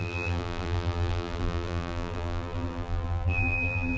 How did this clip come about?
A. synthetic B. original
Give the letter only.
A